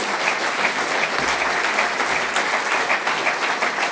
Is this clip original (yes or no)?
yes